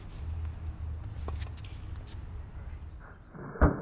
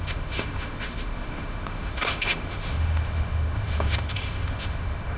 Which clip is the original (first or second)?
first